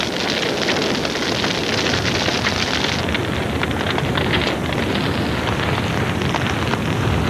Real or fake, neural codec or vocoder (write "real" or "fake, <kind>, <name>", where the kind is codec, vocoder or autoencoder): real